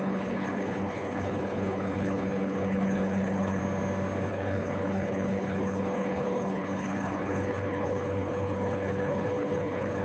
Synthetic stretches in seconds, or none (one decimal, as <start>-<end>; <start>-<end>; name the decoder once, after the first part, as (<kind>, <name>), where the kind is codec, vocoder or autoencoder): 0.0-3.6 (codec, HILCodec); 4.3-10.0